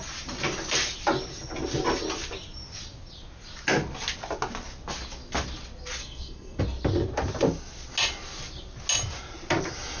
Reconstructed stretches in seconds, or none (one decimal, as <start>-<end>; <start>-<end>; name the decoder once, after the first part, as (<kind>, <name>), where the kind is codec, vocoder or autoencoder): 6.0-6.6 (codec, SNAC)